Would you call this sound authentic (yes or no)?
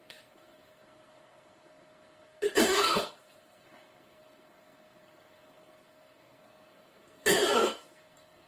no